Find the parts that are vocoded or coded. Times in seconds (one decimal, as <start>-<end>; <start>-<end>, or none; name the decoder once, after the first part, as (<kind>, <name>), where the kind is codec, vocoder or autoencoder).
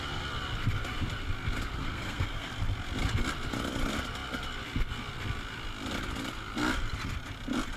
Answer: 1.8-2.5 (codec, SNAC)